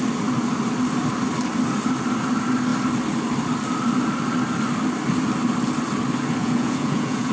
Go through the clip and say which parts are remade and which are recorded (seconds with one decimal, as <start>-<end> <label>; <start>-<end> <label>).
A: 0.0-6.4 recorded; 6.4-7.3 remade